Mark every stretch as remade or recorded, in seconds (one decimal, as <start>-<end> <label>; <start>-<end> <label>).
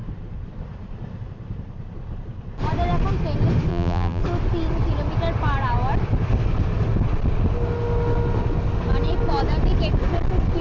0.0-3.7 recorded; 3.7-4.2 remade; 4.2-10.6 recorded